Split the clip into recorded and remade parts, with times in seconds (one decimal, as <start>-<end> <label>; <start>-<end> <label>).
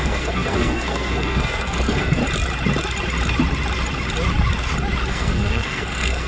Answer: 0.0-2.2 remade; 2.2-5.1 recorded; 5.1-6.3 remade